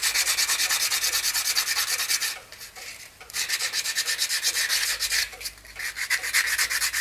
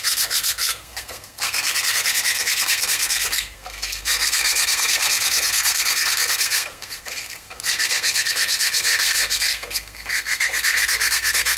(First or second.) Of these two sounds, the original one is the first